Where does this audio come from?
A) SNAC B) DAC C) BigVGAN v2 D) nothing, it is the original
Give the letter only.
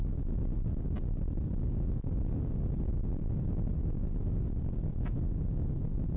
D